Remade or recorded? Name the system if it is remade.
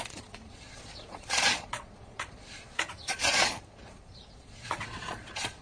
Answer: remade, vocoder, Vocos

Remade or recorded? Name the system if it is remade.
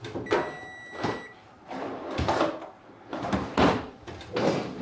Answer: recorded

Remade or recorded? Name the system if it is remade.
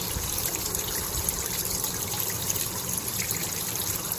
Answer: recorded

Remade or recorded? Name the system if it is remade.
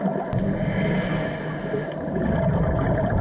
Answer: recorded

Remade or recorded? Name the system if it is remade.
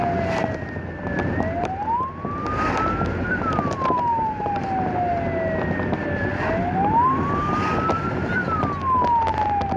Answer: recorded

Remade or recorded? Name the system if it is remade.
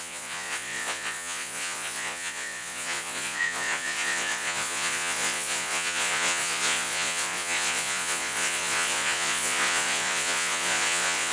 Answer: remade, vocoder, Vocos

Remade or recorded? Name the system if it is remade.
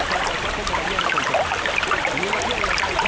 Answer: recorded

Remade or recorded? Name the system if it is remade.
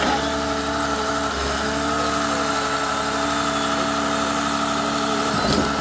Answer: recorded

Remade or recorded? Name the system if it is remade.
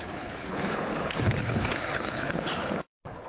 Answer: remade, codec, HILCodec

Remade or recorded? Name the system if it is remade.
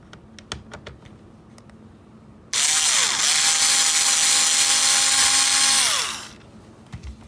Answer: recorded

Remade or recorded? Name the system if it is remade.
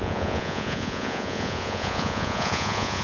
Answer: remade, vocoder, Vocos